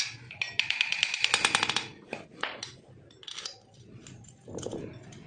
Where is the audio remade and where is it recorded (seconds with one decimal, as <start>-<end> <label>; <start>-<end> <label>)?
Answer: 0.0-5.3 recorded